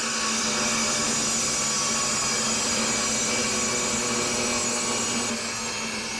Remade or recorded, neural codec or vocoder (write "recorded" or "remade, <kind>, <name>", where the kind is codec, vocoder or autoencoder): recorded